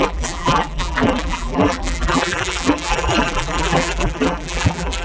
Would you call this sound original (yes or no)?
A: no